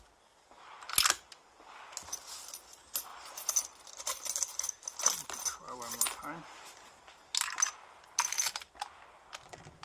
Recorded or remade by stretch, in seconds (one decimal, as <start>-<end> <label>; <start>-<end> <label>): 0.0-9.8 recorded